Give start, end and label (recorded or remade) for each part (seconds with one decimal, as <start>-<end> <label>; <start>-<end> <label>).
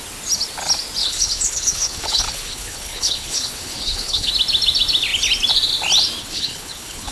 0.0-1.0 recorded; 1.0-4.3 remade; 4.3-6.2 recorded; 6.2-7.1 remade